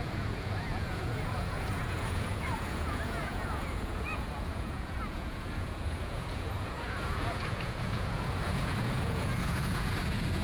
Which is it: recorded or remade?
remade